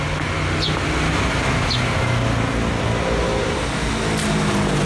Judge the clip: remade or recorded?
recorded